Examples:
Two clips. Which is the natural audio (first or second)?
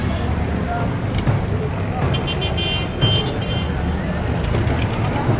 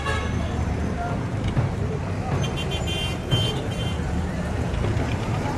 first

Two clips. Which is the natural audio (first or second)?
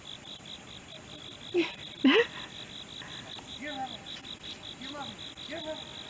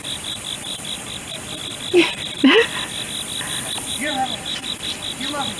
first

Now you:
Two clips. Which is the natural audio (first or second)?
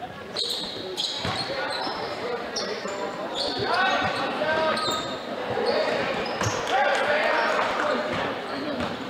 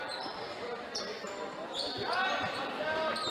second